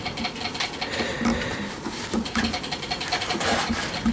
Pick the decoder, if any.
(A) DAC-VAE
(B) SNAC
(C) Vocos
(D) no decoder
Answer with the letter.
D